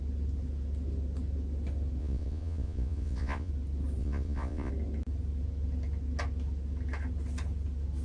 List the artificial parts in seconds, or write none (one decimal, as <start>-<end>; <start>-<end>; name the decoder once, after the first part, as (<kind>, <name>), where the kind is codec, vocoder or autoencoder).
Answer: 2.0-3.5 (vocoder, Vocos); 4.0-4.7